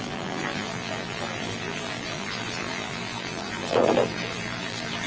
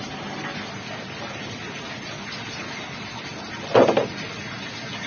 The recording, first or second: second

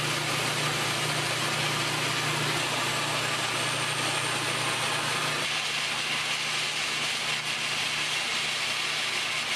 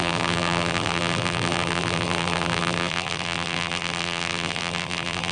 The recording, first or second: first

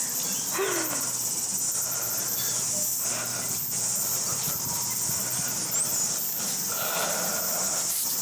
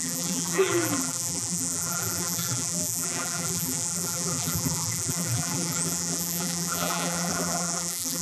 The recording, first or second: first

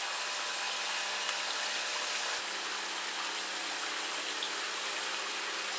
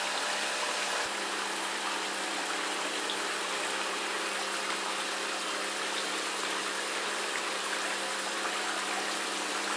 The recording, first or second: first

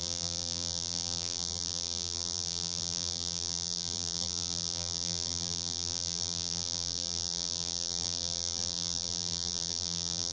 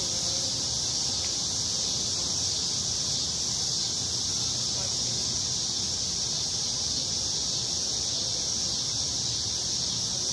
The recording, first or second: second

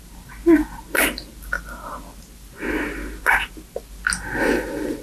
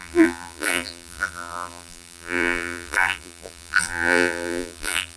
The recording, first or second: first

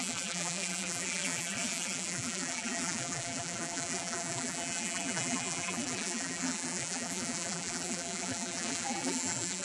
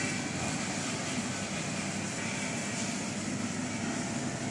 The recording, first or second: second